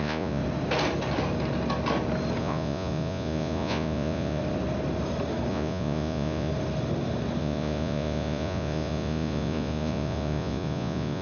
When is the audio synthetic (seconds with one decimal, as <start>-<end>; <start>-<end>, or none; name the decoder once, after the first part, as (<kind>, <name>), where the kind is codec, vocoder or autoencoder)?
0.0-0.4 (vocoder, Vocos); 2.4-4.4; 5.5-6.5; 7.4-11.2